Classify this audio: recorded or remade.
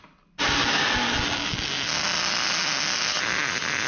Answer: recorded